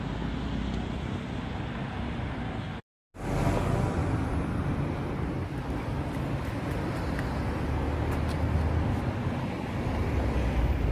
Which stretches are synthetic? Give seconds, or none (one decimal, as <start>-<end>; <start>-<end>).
none

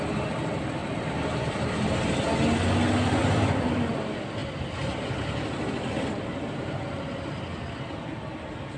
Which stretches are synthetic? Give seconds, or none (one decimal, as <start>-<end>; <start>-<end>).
0.8-1.9; 3.2-4.0; 4.4-7.0

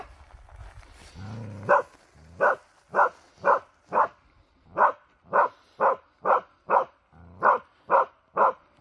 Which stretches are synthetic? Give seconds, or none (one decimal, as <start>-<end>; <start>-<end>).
none